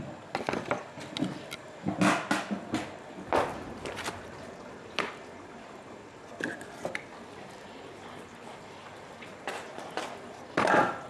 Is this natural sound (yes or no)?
yes